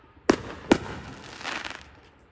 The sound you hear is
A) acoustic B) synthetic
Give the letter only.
A